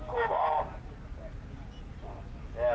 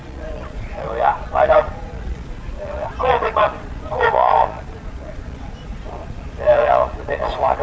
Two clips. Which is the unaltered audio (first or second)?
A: first